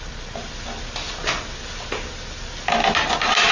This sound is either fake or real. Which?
real